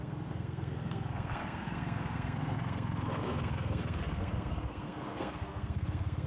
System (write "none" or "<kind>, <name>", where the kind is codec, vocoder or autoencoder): codec, SNAC